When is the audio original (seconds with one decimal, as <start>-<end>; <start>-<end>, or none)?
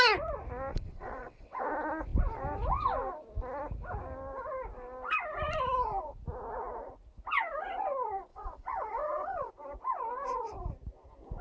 0.0-0.7; 1.6-8.3; 9.5-11.4